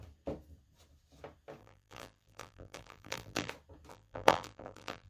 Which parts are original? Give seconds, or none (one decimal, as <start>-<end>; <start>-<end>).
0.0-1.6; 3.5-3.9